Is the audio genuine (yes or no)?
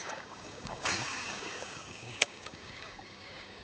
no